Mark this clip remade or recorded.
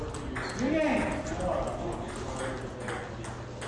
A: recorded